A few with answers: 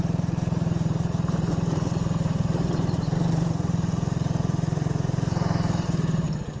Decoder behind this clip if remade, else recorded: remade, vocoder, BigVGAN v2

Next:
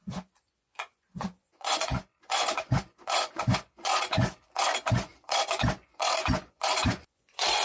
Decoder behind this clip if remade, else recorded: remade, vocoder, Vocos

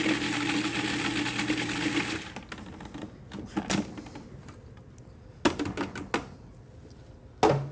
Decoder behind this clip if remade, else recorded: recorded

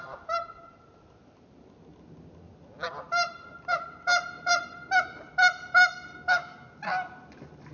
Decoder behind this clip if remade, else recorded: recorded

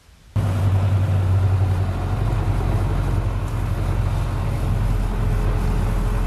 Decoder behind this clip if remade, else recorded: recorded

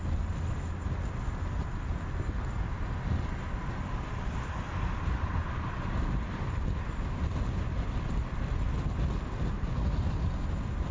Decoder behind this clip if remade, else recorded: recorded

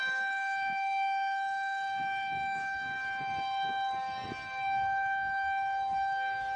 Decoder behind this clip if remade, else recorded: remade, codec, DAC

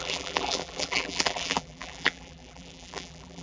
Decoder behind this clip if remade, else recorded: remade, vocoder, BigVGAN v2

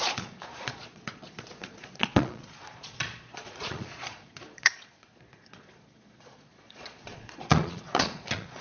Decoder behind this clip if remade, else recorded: remade, vocoder, Vocos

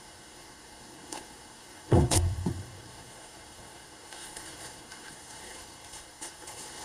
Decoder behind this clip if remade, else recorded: remade, codec, SNAC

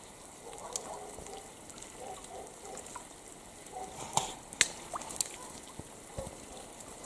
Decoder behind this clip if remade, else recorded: recorded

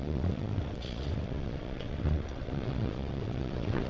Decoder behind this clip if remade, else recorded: remade, vocoder, WaveNeXt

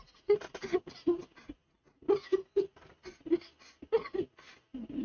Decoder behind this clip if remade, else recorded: recorded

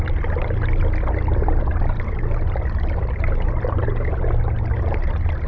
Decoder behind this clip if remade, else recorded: recorded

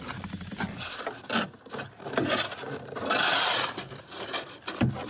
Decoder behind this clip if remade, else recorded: recorded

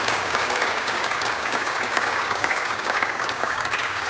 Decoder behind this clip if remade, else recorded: remade, codec, DAC